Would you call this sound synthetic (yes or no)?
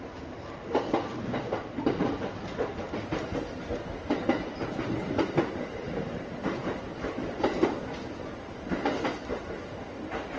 no